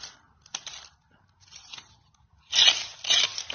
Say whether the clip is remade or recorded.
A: recorded